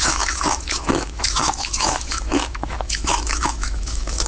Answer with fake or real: fake